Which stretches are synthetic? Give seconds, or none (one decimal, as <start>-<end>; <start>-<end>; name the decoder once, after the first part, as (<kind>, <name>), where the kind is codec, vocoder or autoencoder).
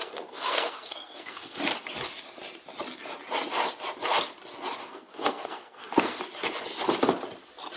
0.0-1.6 (codec, SNAC); 4.9-6.2